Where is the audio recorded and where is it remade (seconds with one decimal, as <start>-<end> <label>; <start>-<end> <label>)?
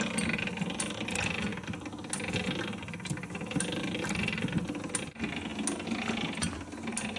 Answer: 0.0-7.2 recorded